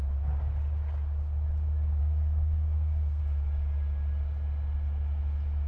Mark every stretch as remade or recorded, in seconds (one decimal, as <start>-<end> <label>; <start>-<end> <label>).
0.0-2.0 recorded; 2.0-3.2 remade; 3.2-5.7 recorded